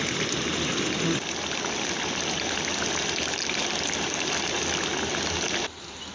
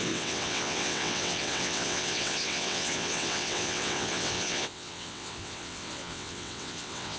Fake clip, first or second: second